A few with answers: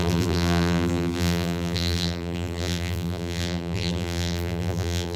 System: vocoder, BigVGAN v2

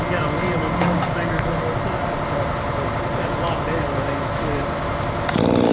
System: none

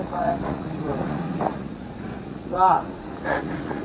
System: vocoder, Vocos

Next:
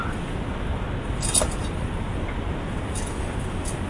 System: none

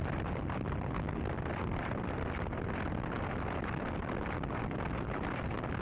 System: none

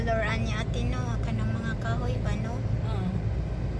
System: none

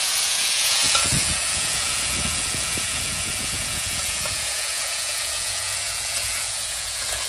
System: vocoder, Vocos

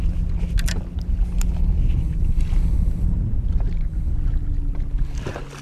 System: none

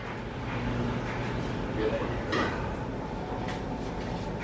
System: none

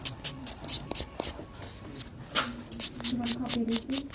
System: none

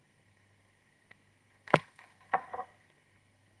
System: codec, SNAC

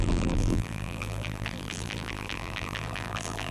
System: vocoder, BigVGAN v2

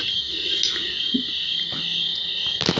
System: none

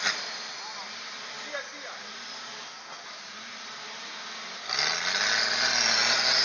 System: none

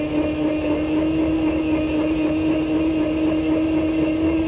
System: none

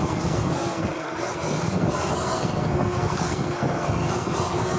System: codec, SNAC